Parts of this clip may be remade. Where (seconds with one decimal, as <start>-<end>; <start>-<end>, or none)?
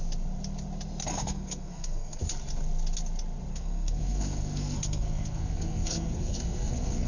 1.1-2.2; 3.5-7.1